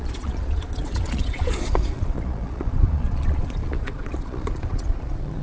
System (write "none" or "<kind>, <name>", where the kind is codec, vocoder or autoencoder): vocoder, Vocos